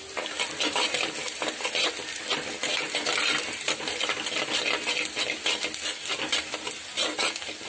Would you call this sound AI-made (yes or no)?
no